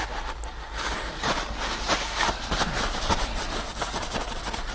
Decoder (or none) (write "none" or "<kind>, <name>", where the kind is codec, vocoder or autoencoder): none